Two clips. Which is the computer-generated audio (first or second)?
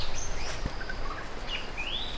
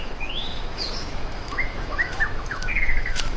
second